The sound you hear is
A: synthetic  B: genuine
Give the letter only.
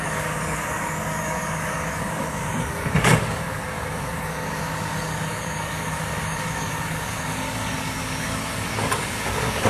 A